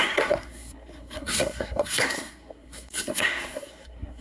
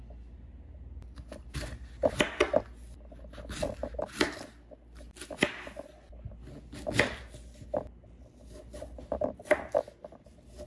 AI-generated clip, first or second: first